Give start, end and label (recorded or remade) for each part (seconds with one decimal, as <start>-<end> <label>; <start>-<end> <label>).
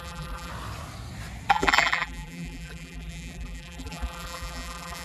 0.0-0.5 remade; 0.5-1.5 recorded; 1.5-5.0 remade